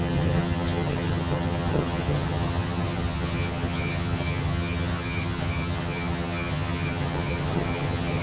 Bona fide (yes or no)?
no